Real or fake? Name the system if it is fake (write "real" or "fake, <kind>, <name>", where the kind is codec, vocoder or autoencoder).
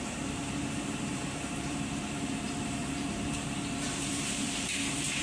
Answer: fake, vocoder, BigVGAN v2